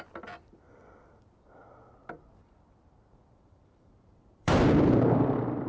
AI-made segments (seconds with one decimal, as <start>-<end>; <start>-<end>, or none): 3.2-5.7